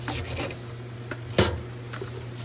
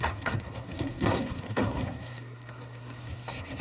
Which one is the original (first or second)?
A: first